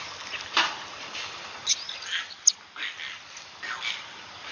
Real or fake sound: real